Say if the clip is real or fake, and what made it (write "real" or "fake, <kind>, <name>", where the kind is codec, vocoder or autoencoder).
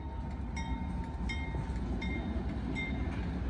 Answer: real